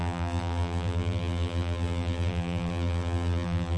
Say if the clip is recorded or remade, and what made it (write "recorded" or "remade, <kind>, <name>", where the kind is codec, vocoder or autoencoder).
remade, vocoder, BigVGAN v2